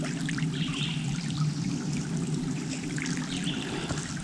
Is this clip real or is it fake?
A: real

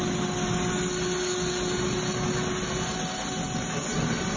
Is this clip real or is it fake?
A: real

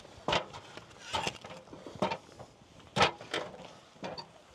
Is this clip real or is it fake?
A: real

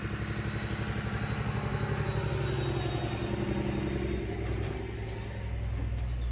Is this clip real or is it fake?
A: real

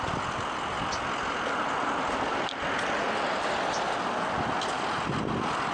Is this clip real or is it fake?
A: real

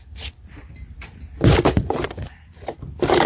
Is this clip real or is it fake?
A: real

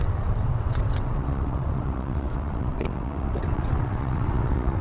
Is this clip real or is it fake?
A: fake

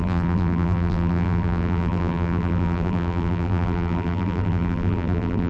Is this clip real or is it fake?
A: fake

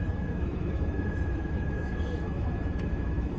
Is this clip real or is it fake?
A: fake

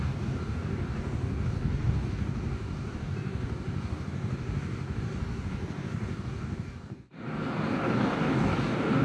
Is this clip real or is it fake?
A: fake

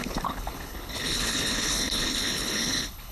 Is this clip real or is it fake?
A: fake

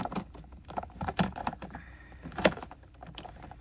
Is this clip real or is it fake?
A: fake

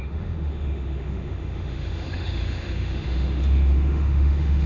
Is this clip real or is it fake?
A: fake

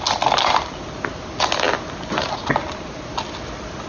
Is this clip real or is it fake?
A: real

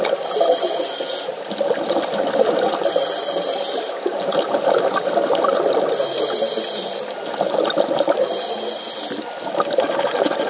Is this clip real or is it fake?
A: real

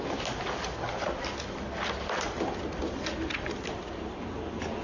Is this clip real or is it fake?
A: real